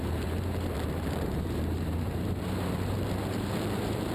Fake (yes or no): yes